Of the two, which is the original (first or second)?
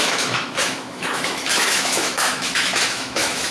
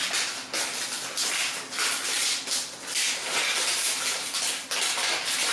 second